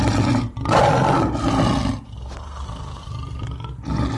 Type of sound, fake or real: real